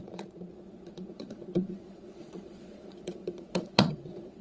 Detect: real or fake fake